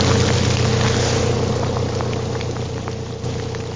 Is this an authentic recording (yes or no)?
yes